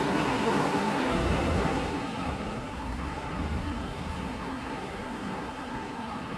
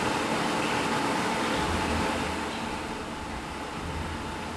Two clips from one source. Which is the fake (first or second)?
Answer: first